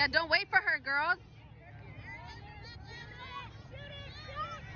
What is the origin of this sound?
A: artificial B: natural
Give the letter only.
B